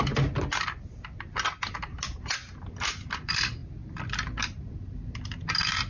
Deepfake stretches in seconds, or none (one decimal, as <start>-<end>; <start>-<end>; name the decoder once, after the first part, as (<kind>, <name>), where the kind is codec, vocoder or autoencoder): none